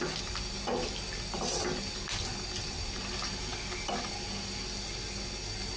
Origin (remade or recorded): recorded